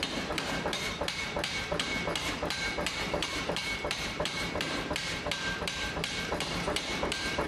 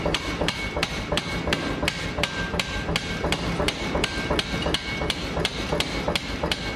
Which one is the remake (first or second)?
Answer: first